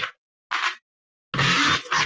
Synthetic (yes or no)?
no